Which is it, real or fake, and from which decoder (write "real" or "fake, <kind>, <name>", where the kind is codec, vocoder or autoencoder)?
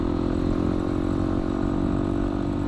real